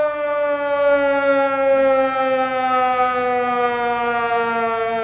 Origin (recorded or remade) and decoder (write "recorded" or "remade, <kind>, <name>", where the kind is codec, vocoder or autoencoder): recorded